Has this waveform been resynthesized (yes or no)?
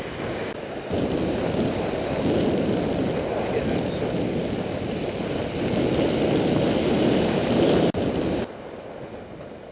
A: no